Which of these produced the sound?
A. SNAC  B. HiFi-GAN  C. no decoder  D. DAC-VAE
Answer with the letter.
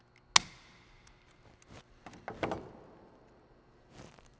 C